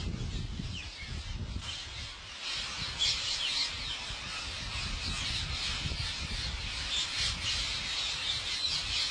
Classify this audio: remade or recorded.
recorded